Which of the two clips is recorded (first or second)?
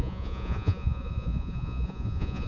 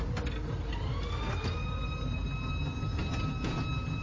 second